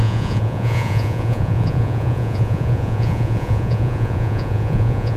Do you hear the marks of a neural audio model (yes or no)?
yes